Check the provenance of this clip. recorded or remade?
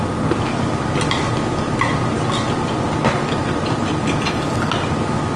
recorded